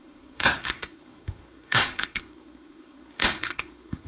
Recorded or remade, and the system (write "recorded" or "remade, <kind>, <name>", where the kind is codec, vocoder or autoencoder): remade, codec, SNAC